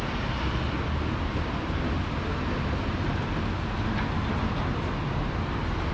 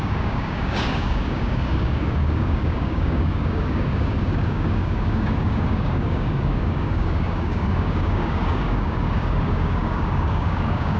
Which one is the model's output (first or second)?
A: second